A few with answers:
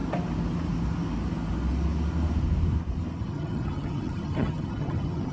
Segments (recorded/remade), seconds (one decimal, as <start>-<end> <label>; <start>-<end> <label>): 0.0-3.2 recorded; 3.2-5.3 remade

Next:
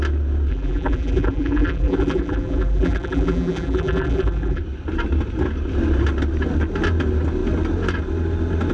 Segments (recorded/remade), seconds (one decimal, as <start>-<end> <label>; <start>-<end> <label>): 0.0-0.5 recorded; 0.5-4.6 remade; 4.6-8.7 recorded

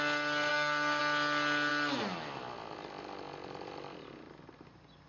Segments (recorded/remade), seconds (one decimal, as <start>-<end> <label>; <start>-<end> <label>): 0.0-0.5 recorded; 0.5-1.0 remade; 1.0-5.1 recorded

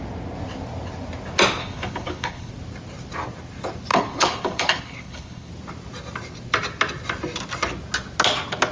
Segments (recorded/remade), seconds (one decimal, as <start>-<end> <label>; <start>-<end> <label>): 0.0-1.6 recorded; 1.6-2.5 remade; 2.5-3.9 recorded; 3.9-5.5 remade; 5.5-8.7 recorded

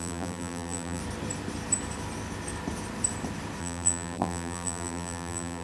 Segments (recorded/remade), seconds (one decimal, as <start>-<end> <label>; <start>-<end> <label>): 0.0-1.0 remade; 1.0-3.6 recorded; 3.6-5.6 remade